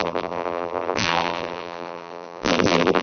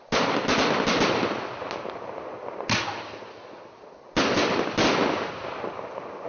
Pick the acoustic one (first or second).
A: second